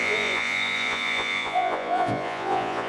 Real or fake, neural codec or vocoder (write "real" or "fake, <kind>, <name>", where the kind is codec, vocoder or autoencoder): fake, vocoder, Vocos